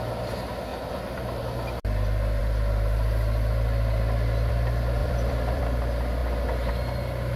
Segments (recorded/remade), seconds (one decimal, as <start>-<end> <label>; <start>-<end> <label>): 0.0-0.7 recorded; 0.7-1.4 remade; 1.4-5.0 recorded; 5.0-5.6 remade; 5.6-7.4 recorded